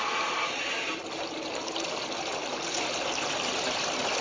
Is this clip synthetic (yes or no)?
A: no